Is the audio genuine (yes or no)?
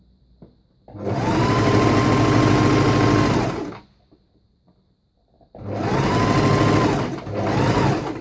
yes